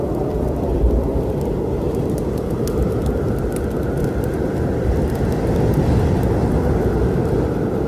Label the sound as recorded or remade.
recorded